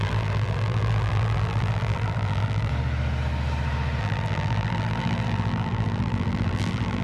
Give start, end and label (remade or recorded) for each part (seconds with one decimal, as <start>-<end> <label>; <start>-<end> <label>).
0.0-2.7 remade; 2.7-4.0 recorded; 4.0-7.0 remade